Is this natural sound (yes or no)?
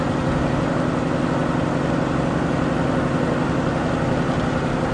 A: yes